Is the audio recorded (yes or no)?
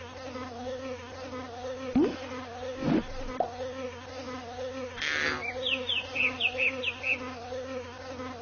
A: yes